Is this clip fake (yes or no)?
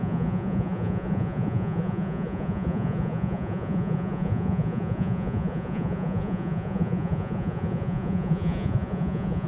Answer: yes